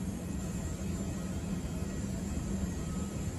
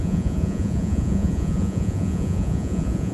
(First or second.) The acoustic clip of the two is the first